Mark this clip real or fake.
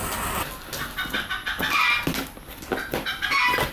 real